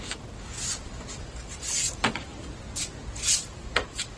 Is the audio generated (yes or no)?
no